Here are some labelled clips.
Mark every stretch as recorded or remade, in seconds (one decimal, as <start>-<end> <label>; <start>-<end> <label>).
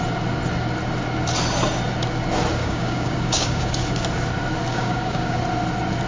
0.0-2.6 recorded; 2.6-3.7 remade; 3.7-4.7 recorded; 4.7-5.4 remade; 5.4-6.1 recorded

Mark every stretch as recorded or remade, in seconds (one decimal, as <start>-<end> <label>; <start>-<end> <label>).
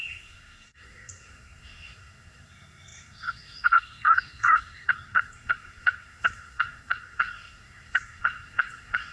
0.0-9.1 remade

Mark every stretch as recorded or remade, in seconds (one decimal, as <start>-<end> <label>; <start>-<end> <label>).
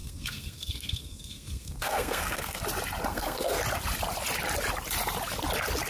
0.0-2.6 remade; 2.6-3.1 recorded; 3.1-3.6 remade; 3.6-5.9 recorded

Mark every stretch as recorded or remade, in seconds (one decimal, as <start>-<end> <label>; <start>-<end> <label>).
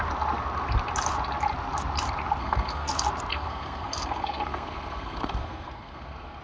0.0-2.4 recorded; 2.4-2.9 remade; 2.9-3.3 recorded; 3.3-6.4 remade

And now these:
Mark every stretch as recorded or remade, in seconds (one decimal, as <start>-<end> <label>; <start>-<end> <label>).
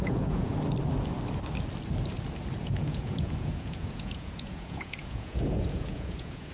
0.0-0.5 remade; 0.5-2.6 recorded; 2.6-6.5 remade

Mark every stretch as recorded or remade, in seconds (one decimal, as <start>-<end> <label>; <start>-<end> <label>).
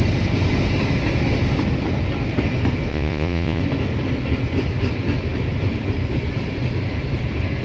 0.0-2.9 recorded; 2.9-3.6 remade; 3.6-7.6 recorded